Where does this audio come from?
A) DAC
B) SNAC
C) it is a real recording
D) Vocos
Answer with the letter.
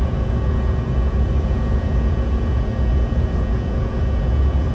D